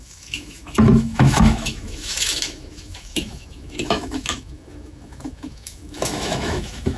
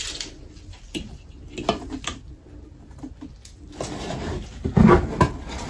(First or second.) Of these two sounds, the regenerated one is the first